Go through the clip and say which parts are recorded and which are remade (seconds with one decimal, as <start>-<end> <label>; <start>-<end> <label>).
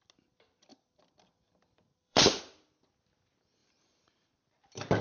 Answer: 0.0-0.7 recorded; 0.7-2.4 remade; 2.4-3.6 recorded; 3.6-5.0 remade